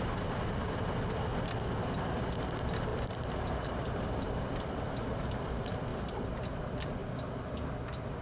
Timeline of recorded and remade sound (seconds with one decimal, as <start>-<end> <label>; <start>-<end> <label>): 0.0-2.9 recorded; 2.9-5.2 remade; 5.2-5.9 recorded; 5.9-6.6 remade; 6.6-8.2 recorded